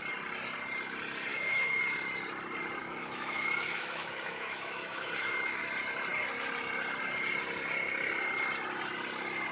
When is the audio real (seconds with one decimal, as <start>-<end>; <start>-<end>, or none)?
0.0-1.3; 1.8-2.8; 5.6-9.5